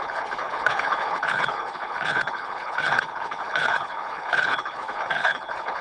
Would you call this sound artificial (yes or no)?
yes